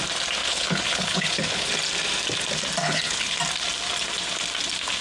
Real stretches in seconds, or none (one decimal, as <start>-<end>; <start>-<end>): 0.0-0.4; 1.7-2.8; 3.4-5.0